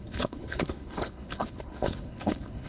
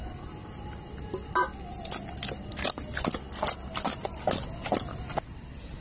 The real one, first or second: second